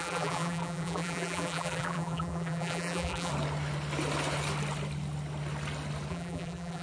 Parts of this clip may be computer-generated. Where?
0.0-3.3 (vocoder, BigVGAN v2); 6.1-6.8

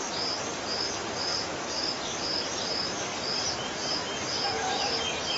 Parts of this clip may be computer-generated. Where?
3.1-3.9 (vocoder, BigVGAN v2)

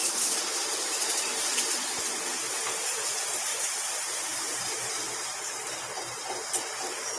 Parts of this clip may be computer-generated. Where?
0.0-2.1 (vocoder, BigVGAN v2); 3.5-6.6

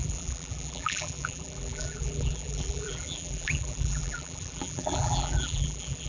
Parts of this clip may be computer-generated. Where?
0.0-6.1 (vocoder, BigVGAN v2)

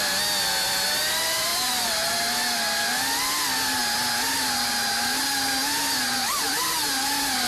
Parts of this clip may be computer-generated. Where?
1.5-2.1 (vocoder, BigVGAN v2)